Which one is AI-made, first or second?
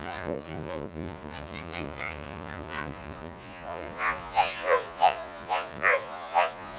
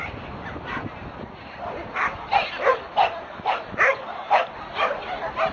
first